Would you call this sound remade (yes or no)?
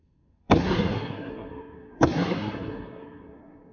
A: yes